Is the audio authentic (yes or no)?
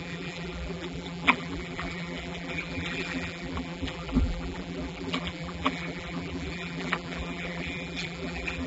no